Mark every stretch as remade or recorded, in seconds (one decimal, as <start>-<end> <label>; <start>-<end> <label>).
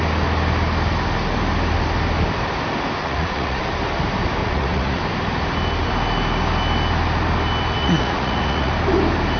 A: 0.0-3.0 recorded; 3.0-3.6 remade; 3.6-4.4 recorded; 4.4-5.0 remade; 5.0-7.8 recorded; 7.8-8.7 remade; 8.7-9.4 recorded